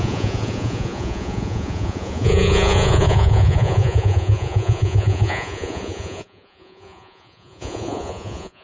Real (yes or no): no